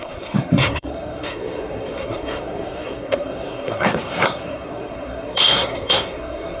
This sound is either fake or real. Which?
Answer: fake